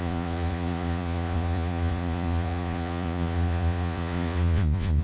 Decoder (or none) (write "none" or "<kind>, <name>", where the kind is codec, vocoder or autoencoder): vocoder, Vocos